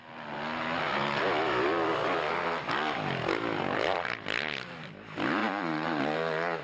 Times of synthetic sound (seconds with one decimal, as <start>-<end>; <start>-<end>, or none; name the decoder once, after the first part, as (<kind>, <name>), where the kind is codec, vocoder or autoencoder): 5.4-6.0 (vocoder, BigVGAN v2)